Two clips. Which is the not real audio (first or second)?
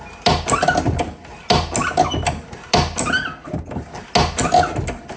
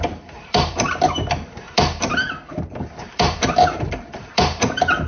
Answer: second